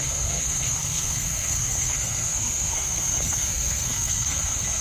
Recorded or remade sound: remade